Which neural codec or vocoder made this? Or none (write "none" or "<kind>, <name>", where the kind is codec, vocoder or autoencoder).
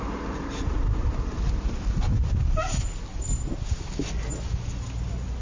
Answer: none